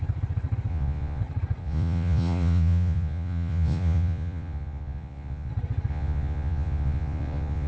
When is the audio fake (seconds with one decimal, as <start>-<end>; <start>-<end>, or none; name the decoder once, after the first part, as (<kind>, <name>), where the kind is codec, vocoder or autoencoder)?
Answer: 0.7-1.2 (vocoder, Vocos); 1.6-5.5; 5.9-7.7